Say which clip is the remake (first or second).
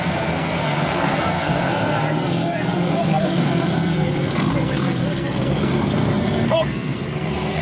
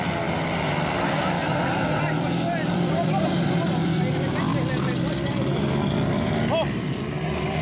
first